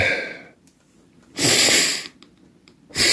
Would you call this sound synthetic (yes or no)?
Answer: no